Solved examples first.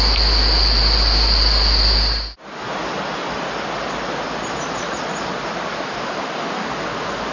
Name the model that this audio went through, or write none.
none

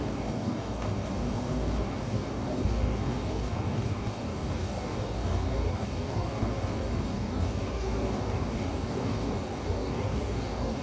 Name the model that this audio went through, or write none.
codec, DAC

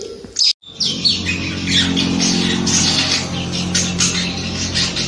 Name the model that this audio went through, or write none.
none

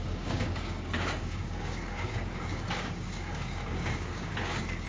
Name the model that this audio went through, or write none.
codec, DAC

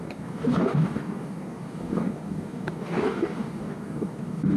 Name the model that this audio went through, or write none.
codec, DAC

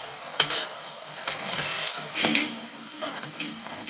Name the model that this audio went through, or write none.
codec, DAC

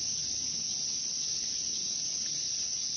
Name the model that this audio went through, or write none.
none